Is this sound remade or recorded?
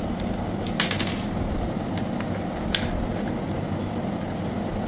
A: recorded